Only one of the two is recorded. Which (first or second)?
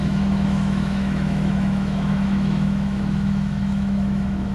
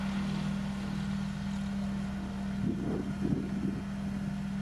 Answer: second